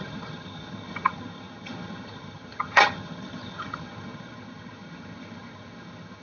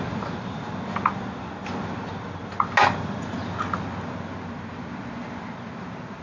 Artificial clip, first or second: first